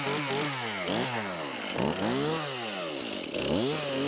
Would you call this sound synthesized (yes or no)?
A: no